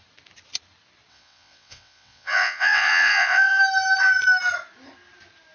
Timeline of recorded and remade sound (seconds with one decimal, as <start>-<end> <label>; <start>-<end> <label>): 0.0-1.1 recorded; 1.1-3.6 remade; 3.6-5.5 recorded